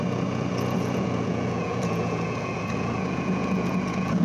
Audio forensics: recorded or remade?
remade